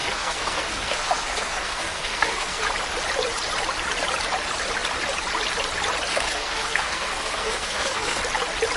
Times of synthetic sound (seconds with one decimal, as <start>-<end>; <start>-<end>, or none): 0.0-2.6; 6.1-8.2